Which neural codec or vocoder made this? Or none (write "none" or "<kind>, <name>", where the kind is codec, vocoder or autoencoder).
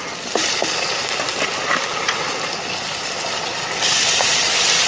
none